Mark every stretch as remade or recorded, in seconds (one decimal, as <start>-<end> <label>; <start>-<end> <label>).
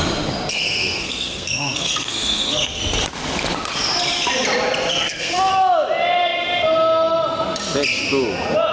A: 0.0-0.5 recorded; 0.5-2.8 remade; 2.8-4.9 recorded; 4.9-5.5 remade; 5.5-8.7 recorded